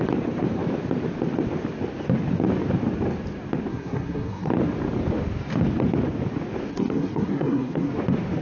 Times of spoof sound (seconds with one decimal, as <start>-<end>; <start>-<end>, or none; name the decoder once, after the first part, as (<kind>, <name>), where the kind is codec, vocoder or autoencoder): 3.7-4.5 (codec, SNAC); 6.7-7.9